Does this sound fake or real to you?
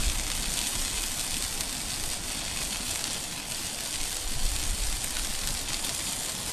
real